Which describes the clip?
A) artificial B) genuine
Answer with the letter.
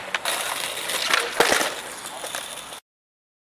B